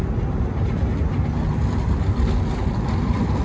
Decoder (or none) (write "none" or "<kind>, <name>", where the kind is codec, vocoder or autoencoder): none